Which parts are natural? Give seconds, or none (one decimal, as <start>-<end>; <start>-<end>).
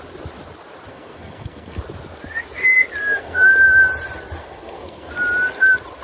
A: 0.0-0.9; 1.8-3.0; 3.5-4.4; 5.1-6.0